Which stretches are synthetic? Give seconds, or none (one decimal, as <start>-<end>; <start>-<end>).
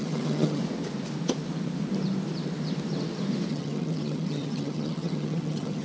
0.0-0.6; 3.5-5.8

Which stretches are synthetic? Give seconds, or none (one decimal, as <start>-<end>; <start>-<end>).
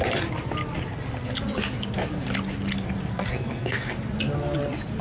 3.1-3.9